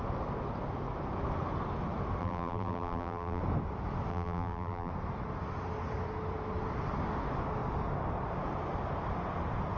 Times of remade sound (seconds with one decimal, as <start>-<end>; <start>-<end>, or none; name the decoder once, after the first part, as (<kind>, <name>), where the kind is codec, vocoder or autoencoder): 2.2-3.4 (vocoder, BigVGAN v2); 4.1-4.9